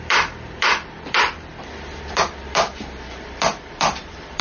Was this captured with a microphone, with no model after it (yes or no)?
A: no